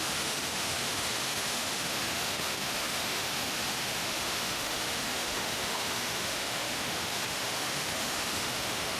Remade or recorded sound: remade